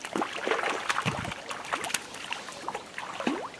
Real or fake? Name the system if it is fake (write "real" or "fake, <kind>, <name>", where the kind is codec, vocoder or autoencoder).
real